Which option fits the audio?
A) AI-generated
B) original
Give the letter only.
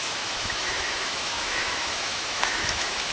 A